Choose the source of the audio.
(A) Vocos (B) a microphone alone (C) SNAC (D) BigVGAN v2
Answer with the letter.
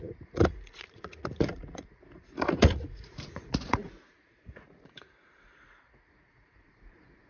A